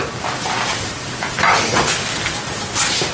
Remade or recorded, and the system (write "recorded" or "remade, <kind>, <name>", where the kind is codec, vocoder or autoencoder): remade, vocoder, BigVGAN v2